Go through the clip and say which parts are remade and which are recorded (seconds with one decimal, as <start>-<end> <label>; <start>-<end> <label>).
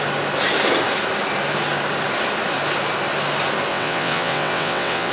0.0-3.7 recorded; 3.7-5.1 remade